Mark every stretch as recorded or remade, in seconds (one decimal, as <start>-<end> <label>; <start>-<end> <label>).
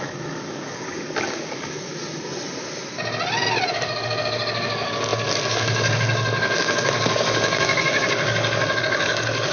0.0-1.9 remade; 1.9-3.7 recorded; 3.7-9.5 remade